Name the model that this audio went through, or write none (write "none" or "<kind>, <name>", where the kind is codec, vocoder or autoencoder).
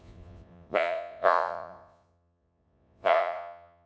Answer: vocoder, Vocos